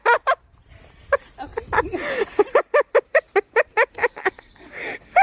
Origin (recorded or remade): recorded